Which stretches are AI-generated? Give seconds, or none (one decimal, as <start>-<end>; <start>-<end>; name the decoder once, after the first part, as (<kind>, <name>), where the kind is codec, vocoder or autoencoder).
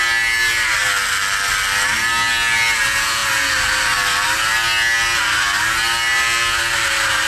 none